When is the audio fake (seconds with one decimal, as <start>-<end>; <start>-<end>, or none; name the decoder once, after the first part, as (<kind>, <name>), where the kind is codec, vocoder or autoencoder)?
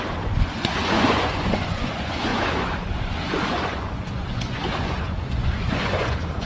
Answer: 0.0-6.5 (vocoder, Vocos)